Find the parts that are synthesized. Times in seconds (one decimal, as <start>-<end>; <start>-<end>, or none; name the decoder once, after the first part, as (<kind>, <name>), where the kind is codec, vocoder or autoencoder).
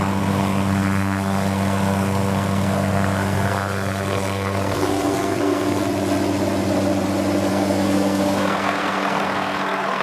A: 0.0-5.8 (codec, SNAC); 7.5-10.0